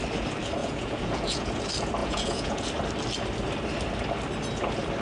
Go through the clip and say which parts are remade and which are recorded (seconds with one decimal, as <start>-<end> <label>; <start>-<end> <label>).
0.0-0.6 recorded; 0.6-1.5 remade; 1.5-2.0 recorded; 2.0-2.7 remade; 2.7-5.0 recorded